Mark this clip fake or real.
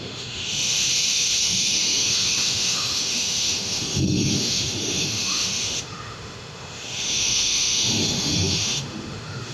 fake